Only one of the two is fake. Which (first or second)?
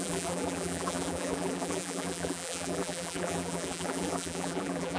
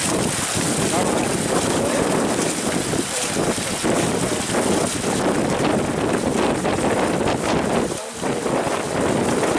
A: first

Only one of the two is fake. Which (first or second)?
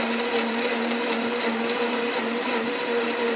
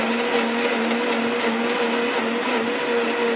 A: first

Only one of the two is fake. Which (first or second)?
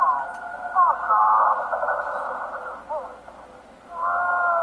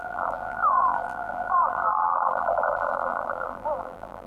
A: second